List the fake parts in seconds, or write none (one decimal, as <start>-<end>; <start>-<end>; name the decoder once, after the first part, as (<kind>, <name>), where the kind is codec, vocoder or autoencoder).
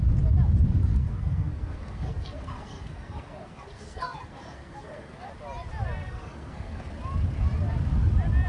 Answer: 0.9-5.3 (codec, SNAC); 6.0-6.9